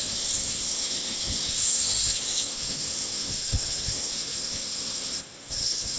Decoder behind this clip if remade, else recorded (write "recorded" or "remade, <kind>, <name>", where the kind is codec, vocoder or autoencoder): remade, codec, SNAC